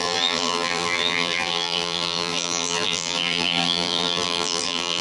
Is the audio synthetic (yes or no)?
yes